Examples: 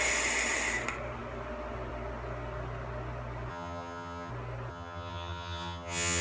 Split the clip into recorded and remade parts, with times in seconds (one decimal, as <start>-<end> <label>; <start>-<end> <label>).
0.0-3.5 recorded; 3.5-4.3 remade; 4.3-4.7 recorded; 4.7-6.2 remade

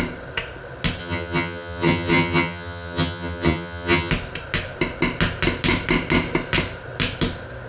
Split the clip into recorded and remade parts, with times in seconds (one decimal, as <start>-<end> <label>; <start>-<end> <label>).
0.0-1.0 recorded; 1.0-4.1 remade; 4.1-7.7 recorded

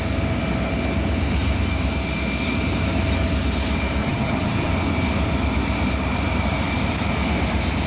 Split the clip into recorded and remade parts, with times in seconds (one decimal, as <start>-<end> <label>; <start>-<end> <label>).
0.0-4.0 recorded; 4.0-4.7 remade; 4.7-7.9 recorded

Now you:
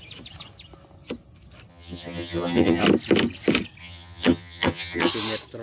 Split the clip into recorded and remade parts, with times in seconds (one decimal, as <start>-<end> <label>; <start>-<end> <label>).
0.0-1.7 recorded; 1.7-2.8 remade; 2.8-3.8 recorded; 3.8-5.1 remade; 5.1-5.6 recorded